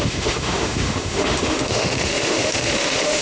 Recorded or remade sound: remade